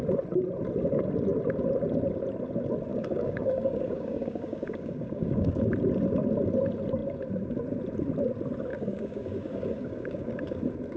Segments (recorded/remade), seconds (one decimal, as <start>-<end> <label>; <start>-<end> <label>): 0.0-2.9 recorded; 2.9-5.7 remade; 5.7-8.7 recorded; 8.7-10.6 remade; 10.6-11.0 recorded